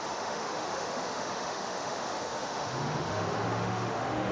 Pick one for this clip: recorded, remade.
remade